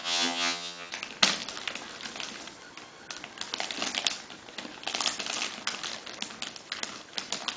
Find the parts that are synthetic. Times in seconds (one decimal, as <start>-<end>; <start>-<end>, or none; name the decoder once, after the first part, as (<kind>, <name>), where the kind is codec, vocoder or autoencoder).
0.0-0.9 (vocoder, HiFi-GAN)